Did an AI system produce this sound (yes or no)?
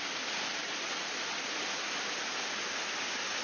no